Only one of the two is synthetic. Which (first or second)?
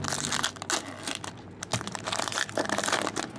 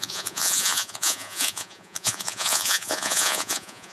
second